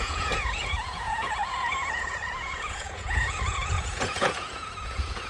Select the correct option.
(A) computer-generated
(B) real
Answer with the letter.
A